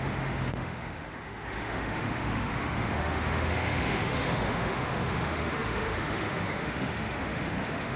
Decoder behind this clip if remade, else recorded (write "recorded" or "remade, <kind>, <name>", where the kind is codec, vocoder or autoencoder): remade, autoencoder, DAC-VAE